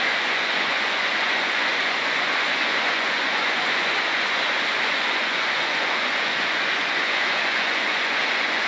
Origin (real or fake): fake